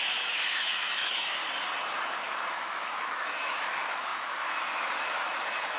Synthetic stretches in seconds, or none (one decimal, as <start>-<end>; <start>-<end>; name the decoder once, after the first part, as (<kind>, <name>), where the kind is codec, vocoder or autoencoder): 0.0-1.4 (autoencoder, DAC-VAE); 2.5-5.8